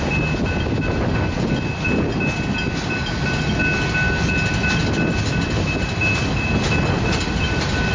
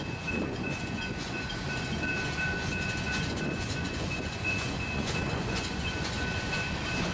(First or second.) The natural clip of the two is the first